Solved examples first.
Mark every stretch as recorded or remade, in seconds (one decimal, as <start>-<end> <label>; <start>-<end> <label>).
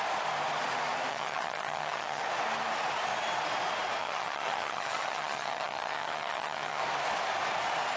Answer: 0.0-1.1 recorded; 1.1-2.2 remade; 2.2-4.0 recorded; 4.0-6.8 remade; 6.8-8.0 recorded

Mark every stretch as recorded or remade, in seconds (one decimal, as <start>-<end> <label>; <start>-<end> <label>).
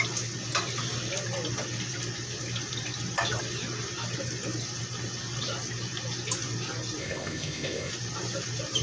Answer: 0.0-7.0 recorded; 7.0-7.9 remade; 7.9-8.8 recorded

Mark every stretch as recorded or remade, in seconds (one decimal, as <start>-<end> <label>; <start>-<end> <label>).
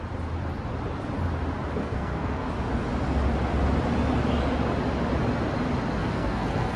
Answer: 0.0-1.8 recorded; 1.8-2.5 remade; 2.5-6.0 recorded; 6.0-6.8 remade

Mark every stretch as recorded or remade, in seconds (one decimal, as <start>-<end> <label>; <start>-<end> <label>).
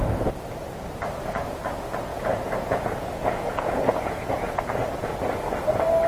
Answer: 0.0-2.1 recorded; 2.1-4.6 remade; 4.6-6.1 recorded